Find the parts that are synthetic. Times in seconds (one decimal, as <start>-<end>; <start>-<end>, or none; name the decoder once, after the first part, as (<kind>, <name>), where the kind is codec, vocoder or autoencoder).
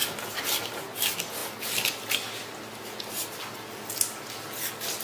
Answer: none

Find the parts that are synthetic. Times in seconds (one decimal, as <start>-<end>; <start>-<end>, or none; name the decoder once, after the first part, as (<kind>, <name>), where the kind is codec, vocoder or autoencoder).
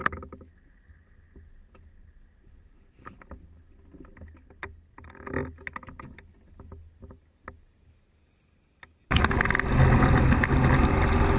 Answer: 0.0-0.5 (autoencoder, DAC-VAE)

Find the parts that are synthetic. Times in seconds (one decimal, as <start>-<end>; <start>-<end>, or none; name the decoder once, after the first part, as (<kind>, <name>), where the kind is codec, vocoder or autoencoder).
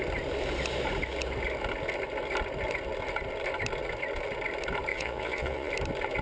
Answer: 4.9-5.7 (vocoder, Vocos)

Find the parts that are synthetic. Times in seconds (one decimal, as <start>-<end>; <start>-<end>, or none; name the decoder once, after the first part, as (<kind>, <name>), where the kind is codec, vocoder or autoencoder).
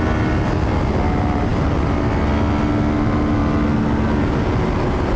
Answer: none